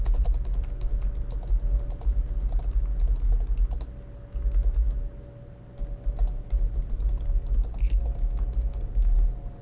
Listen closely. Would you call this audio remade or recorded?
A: recorded